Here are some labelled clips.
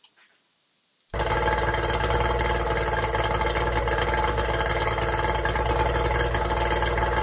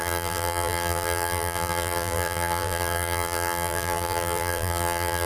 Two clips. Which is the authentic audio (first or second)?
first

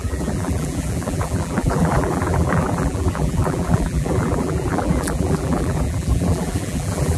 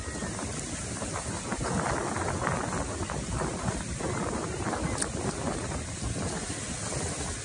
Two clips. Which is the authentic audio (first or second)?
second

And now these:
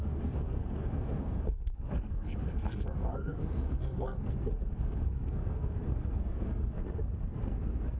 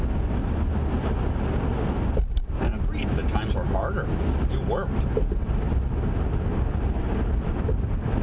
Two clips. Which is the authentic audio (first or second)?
second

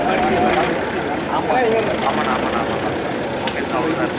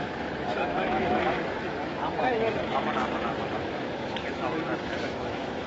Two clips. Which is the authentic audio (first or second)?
first